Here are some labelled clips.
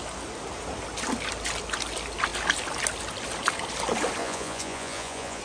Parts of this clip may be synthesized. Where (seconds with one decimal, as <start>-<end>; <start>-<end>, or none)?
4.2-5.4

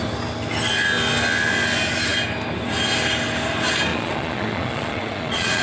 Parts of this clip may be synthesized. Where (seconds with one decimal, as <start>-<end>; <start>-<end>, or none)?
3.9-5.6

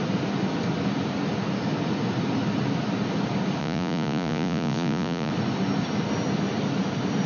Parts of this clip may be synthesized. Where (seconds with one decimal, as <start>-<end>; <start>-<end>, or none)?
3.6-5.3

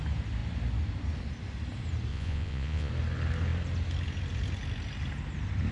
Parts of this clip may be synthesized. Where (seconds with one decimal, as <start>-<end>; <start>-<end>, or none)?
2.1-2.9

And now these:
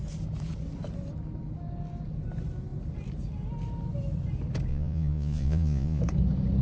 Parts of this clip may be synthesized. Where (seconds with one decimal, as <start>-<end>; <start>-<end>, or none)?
4.7-6.0